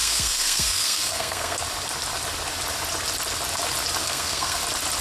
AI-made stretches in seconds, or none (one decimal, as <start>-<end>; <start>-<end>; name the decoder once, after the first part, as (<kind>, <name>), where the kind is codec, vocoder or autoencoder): 0.0-1.6 (codec, SNAC); 4.0-4.6